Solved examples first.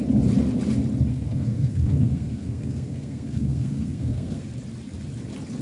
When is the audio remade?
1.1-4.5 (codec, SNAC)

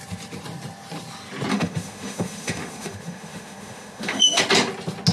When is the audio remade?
1.5-4.4 (autoencoder, DAC-VAE)